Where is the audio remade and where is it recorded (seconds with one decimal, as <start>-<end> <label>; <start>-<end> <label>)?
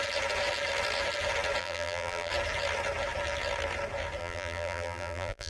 0.0-1.6 recorded; 1.6-2.3 remade; 2.3-4.2 recorded; 4.2-5.5 remade